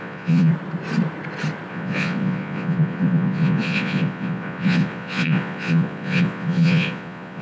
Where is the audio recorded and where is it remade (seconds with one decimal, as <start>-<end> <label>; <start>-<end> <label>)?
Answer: 0.0-0.5 remade; 0.5-1.7 recorded; 1.7-7.4 remade